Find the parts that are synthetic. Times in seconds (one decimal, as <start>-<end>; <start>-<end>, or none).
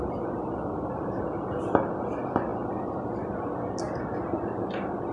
0.0-1.8